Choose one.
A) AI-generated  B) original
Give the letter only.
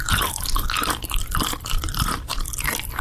A